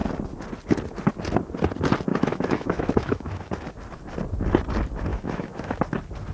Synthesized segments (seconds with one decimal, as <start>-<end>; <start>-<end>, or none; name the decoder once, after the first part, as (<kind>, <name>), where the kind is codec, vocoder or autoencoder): 2.1-3.5 (autoencoder, DAC-VAE); 5.1-5.8